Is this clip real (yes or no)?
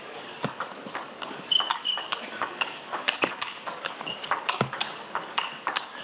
no